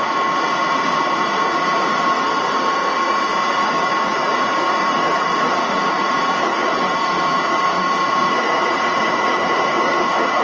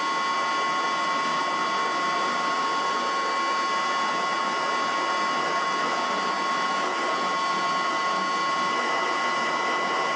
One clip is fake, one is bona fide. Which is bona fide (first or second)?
second